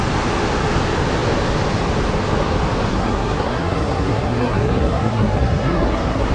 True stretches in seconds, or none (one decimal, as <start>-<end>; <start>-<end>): 0.0-2.9